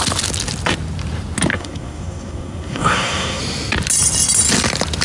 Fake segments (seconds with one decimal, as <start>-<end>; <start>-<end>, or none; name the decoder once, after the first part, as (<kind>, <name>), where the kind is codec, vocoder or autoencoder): 1.5-3.4 (codec, SNAC)